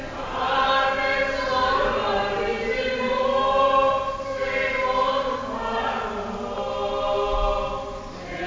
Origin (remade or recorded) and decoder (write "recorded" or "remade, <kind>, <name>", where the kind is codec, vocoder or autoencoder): recorded